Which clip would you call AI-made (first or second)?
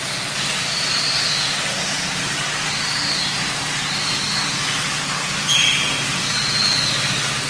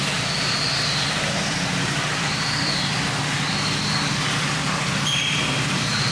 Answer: second